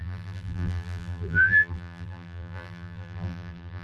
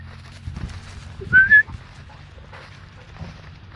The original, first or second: second